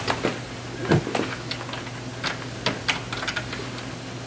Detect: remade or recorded recorded